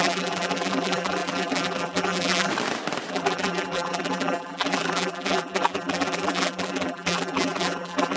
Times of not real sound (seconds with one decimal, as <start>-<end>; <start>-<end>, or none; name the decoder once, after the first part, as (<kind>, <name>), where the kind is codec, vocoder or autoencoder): 0.0-2.5 (vocoder, BigVGAN v2); 3.1-8.2